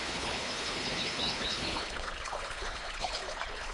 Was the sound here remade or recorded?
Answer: remade